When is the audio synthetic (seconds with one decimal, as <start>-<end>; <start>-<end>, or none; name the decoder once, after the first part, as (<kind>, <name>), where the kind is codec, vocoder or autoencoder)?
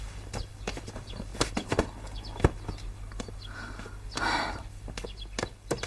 none